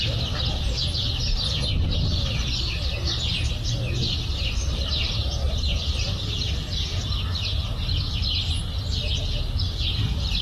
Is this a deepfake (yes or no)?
no